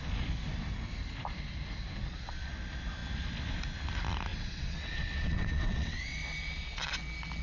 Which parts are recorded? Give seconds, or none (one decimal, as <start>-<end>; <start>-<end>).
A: 0.0-4.3; 6.8-7.4